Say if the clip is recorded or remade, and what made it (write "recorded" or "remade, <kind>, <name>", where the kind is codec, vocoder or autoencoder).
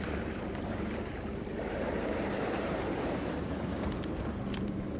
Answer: remade, vocoder, BigVGAN v2